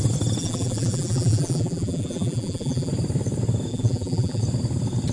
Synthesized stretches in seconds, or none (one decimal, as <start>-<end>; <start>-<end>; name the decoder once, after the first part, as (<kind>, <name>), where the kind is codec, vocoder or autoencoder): 0.4-2.9 (vocoder, BigVGAN v2); 3.7-4.4